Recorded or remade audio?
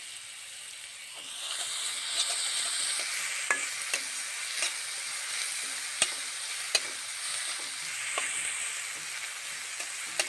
recorded